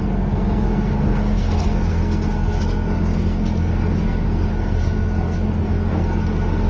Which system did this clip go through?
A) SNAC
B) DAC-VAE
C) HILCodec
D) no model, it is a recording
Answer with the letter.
A